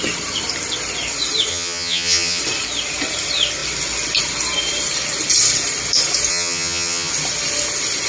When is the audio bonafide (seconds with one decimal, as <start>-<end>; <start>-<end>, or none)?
0.0-1.5; 2.4-6.3; 7.1-8.1